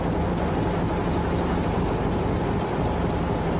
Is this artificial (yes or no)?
no